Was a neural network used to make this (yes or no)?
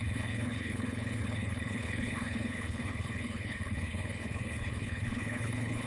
yes